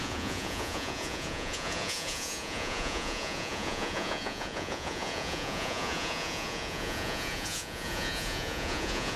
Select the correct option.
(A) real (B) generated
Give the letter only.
B